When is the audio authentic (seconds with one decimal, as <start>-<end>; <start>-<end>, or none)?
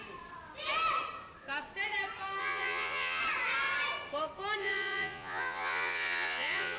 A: 0.0-2.4; 3.2-4.6